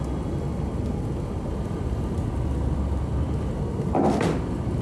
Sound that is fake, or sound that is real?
real